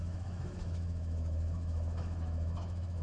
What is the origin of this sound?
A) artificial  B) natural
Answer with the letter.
A